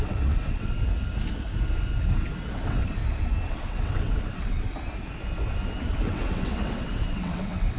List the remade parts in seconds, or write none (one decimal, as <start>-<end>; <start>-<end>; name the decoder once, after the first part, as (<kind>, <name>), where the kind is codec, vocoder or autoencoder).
0.0-0.8 (vocoder, WaveNeXt); 2.5-3.0; 3.5-4.7; 5.9-7.8